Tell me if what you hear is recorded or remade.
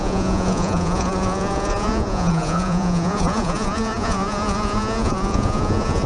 remade